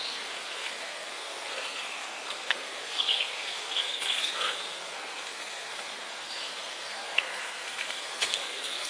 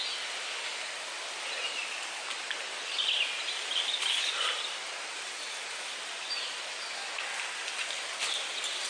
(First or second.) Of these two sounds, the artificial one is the first